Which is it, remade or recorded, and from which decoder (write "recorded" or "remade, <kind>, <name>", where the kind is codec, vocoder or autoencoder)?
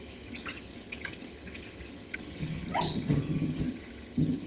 remade, vocoder, HiFi-GAN